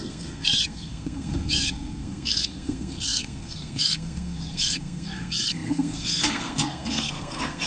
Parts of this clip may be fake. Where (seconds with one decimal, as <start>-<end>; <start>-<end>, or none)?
0.0-7.7